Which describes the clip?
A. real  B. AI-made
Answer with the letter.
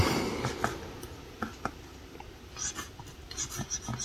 A